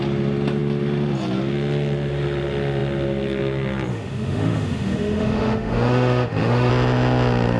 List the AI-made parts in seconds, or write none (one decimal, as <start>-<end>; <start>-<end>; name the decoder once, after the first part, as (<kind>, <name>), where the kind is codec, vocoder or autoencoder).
3.9-6.7 (autoencoder, DAC-VAE)